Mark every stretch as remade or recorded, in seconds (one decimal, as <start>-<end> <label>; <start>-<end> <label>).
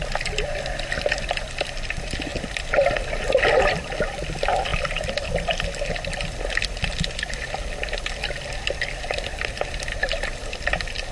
0.0-11.1 recorded